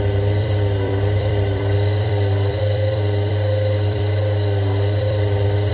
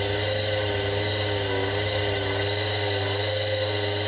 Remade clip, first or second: first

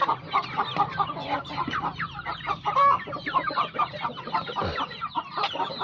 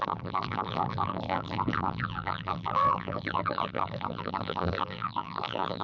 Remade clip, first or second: second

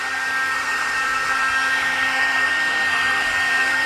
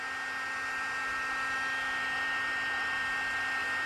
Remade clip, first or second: first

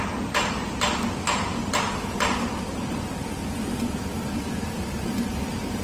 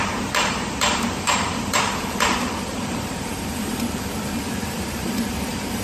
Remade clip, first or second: second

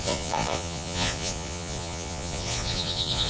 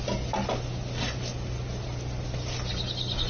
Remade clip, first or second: first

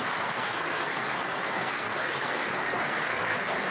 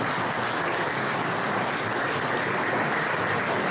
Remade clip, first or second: first